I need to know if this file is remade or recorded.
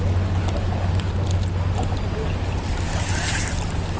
recorded